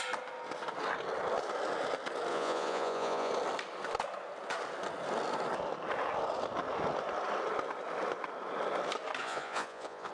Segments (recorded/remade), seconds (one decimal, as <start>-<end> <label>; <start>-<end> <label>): 0.0-2.3 recorded; 2.3-3.3 remade; 3.3-9.2 recorded; 9.2-10.1 remade